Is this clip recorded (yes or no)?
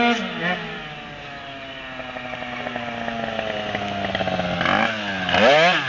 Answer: yes